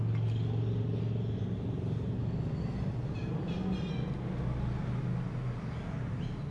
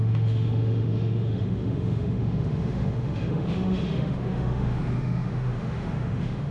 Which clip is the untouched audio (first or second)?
first